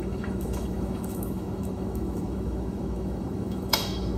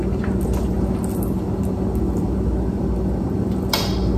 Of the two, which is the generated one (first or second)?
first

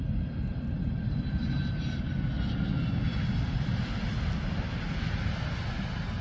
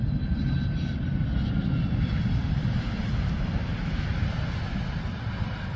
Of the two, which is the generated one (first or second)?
second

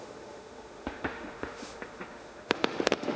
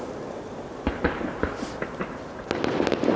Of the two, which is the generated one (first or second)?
first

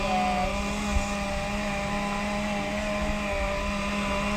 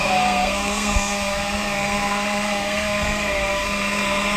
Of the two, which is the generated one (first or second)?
second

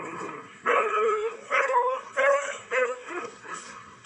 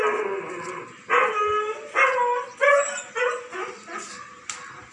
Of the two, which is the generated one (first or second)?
first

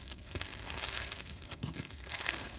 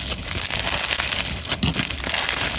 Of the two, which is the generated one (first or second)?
first